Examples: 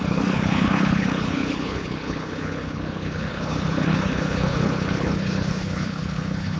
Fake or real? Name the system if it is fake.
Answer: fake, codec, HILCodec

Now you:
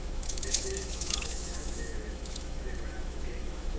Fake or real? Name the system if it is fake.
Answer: fake, autoencoder, DAC-VAE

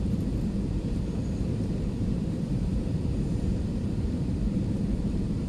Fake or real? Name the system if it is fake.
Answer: fake, vocoder, BigVGAN v2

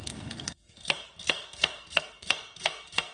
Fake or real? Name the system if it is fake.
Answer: fake, codec, SNAC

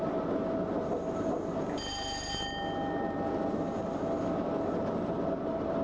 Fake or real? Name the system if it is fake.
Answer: real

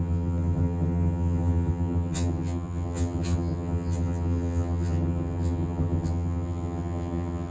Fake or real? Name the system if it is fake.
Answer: fake, vocoder, HiFi-GAN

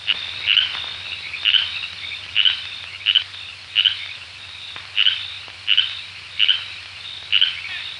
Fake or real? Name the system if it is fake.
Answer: real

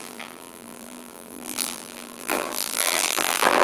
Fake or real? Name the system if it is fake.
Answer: fake, vocoder, BigVGAN v2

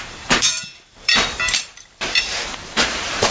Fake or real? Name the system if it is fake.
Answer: fake, vocoder, BigVGAN v2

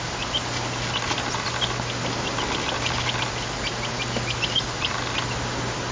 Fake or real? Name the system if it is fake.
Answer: real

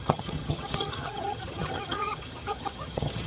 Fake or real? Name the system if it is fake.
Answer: fake, vocoder, HiFi-GAN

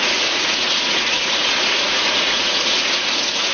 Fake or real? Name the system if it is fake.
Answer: fake, vocoder, Vocos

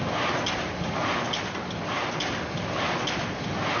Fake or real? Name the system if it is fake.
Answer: real